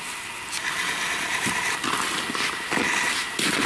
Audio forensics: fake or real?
real